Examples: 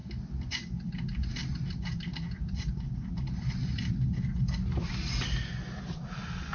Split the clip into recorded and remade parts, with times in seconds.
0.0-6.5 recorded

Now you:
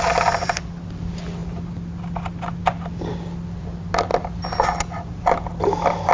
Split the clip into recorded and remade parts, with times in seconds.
0.0-6.1 recorded

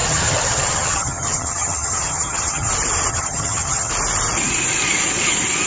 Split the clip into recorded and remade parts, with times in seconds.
0.0-2.7 remade; 2.7-3.1 recorded; 3.1-3.9 remade; 3.9-5.7 recorded